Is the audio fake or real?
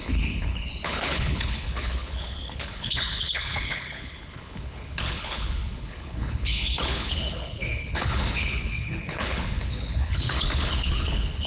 fake